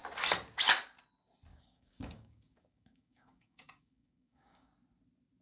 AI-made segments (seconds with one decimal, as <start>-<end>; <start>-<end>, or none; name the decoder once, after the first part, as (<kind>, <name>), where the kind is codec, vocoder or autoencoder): 1.5-4.7 (codec, DAC)